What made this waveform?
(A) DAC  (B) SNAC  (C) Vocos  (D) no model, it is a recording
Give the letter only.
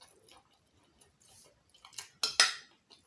D